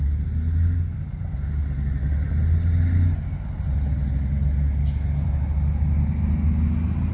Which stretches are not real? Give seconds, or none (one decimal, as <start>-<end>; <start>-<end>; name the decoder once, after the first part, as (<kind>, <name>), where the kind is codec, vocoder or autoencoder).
none